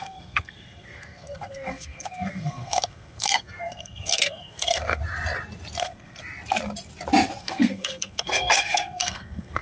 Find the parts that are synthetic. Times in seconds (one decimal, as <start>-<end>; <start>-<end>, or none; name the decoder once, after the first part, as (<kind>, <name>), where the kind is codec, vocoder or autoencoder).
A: 0.0-5.0 (codec, SNAC); 5.8-6.2; 7.4-9.6